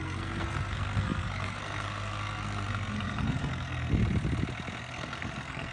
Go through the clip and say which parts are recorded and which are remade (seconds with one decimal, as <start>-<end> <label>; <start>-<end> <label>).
0.0-4.0 remade; 4.0-4.8 recorded; 4.8-5.7 remade